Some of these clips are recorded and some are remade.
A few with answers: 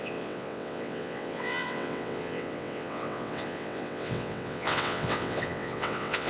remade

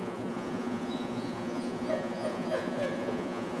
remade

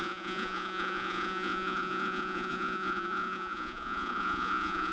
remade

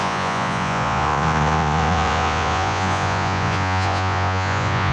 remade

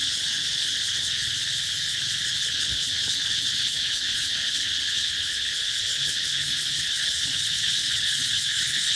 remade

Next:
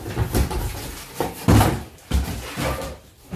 recorded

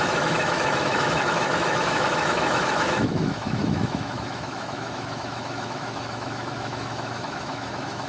remade